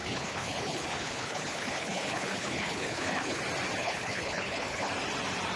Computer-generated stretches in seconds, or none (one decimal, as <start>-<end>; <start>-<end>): 0.0-3.4; 3.8-4.9